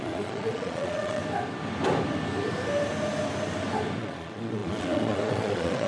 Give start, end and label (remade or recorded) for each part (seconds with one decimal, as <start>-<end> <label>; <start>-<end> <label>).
0.0-1.2 remade; 1.2-4.0 recorded; 4.0-5.9 remade